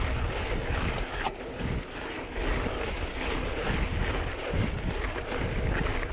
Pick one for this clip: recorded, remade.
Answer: recorded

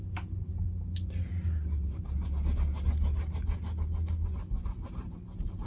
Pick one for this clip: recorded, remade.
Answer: recorded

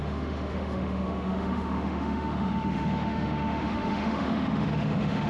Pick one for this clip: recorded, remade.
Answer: remade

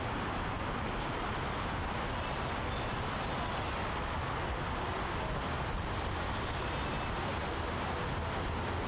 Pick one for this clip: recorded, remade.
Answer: recorded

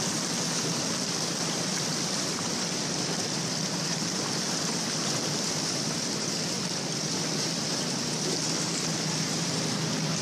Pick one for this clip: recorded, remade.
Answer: remade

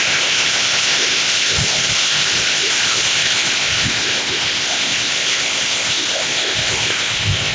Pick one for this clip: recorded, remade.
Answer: remade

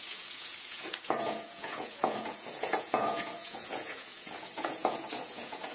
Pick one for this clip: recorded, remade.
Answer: remade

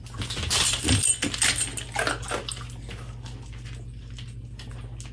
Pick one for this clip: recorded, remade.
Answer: recorded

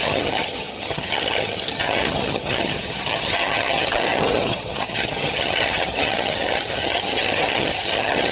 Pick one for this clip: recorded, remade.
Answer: remade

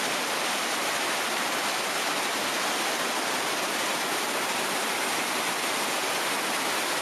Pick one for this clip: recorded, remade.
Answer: remade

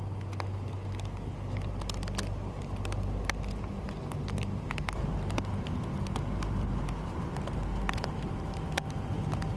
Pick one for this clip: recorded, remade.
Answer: recorded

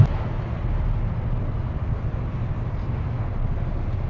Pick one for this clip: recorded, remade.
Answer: recorded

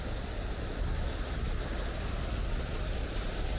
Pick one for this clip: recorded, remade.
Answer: recorded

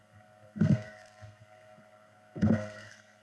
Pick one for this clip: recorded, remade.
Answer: remade